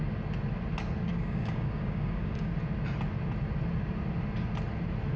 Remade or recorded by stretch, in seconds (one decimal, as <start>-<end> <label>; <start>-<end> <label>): 0.0-1.1 recorded; 1.1-2.5 remade; 2.5-5.2 recorded